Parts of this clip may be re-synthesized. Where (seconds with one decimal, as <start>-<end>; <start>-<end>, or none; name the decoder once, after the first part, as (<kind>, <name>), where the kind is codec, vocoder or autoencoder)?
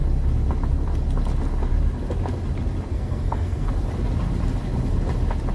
2.9-3.7 (codec, SNAC)